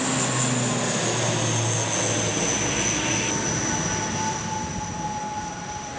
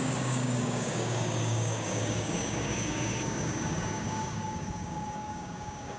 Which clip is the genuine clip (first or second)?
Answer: first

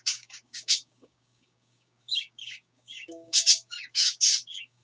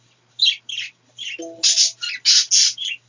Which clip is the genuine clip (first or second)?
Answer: second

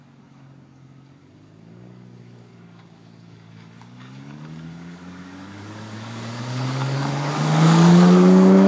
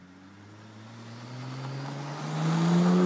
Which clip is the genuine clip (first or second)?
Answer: second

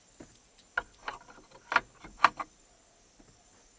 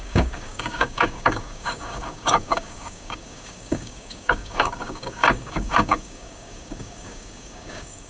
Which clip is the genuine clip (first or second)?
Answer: first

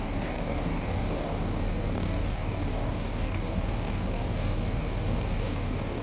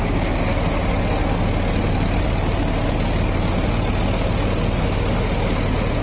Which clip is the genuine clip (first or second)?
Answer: second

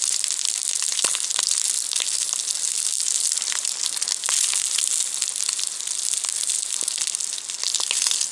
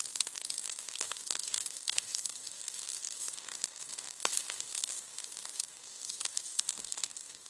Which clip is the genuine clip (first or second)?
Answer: first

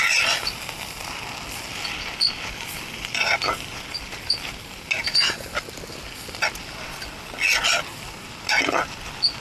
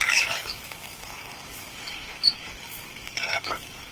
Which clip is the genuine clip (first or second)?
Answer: first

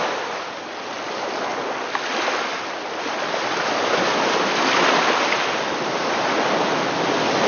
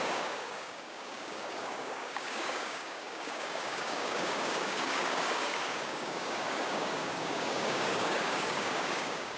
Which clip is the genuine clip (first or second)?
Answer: first